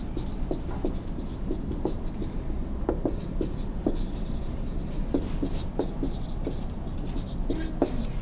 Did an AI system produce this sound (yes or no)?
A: no